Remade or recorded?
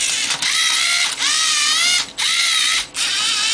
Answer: recorded